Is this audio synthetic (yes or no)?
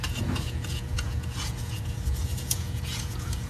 yes